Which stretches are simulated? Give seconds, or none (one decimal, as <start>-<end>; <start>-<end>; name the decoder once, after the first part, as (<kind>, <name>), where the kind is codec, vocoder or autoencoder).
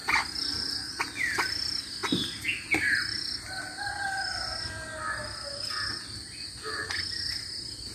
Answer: none